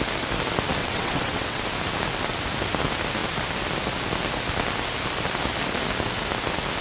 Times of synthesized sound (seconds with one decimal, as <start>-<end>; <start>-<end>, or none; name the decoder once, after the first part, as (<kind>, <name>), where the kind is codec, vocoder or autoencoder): 0.8-1.6 (vocoder, WaveNeXt)